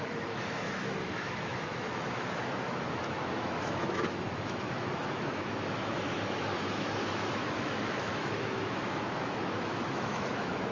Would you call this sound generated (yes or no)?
yes